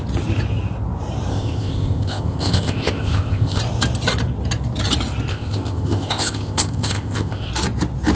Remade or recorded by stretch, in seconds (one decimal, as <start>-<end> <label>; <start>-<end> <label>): 0.0-1.3 recorded; 1.3-3.6 remade; 3.6-5.3 recorded; 5.3-7.5 remade; 7.5-8.2 recorded